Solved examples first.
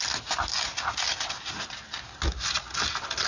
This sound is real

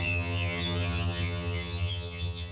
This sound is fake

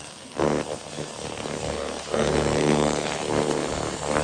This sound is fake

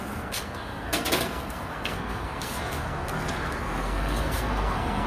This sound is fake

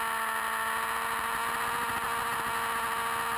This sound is real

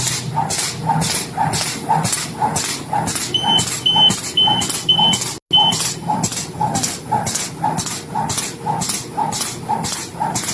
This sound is real